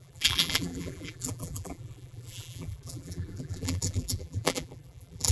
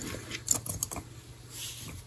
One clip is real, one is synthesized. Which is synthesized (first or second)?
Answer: first